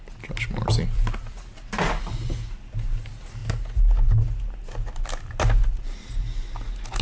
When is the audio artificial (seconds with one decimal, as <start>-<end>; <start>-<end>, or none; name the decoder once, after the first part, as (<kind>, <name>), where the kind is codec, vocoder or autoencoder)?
none